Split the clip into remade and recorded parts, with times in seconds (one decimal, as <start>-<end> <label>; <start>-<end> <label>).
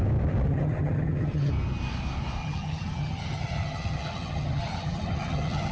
0.0-0.5 recorded; 0.5-1.5 remade; 1.5-2.4 recorded; 2.4-5.7 remade